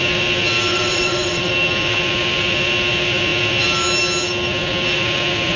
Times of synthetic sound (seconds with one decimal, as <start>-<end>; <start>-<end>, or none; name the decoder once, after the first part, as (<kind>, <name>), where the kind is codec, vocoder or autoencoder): 0.7-1.5 (vocoder, WaveNeXt)